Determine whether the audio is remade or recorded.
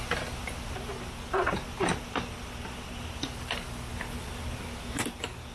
recorded